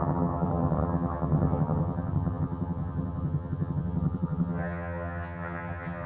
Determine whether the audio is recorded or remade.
remade